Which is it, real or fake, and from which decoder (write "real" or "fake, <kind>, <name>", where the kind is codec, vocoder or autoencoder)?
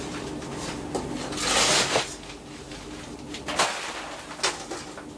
real